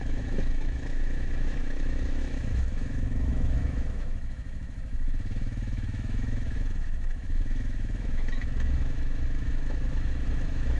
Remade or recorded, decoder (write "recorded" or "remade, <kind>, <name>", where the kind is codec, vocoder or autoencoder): remade, autoencoder, DAC-VAE